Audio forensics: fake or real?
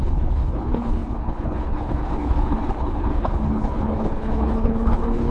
fake